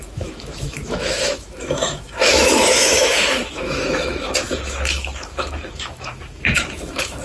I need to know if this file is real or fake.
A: fake